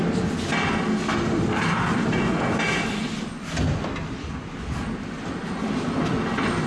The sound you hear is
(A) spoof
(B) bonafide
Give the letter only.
B